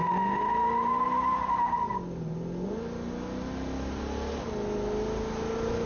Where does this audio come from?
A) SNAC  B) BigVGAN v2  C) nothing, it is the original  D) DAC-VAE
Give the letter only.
C